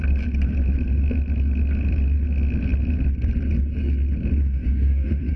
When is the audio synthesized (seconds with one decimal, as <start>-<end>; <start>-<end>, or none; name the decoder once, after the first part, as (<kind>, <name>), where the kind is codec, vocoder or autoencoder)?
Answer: 4.5-5.4 (autoencoder, DAC-VAE)